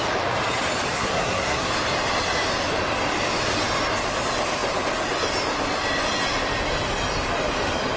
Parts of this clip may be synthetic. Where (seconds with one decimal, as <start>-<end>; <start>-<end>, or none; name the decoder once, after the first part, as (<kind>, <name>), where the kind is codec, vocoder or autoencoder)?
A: 0.9-1.7 (codec, SNAC)

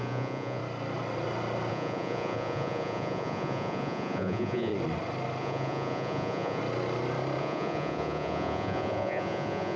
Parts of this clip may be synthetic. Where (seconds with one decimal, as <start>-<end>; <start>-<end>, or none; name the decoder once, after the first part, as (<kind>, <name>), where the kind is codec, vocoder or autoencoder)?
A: 0.0-0.6 (vocoder, Vocos); 1.7-4.7; 5.4-6.6; 7.4-9.8

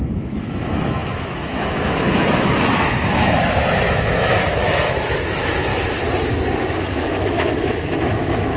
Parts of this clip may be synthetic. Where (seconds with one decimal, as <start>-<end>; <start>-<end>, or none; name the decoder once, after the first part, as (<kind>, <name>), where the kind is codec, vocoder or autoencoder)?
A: 0.0-5.7 (autoencoder, DAC-VAE); 6.8-8.6

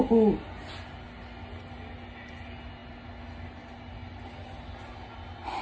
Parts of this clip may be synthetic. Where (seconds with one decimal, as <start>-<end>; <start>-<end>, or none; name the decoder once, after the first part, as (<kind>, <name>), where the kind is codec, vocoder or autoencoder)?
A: none